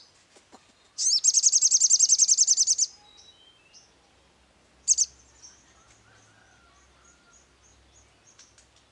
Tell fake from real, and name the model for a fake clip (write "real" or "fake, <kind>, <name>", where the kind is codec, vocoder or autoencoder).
real